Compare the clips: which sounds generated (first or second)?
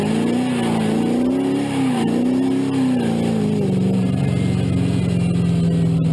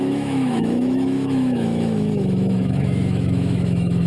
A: second